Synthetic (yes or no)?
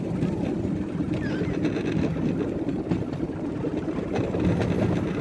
no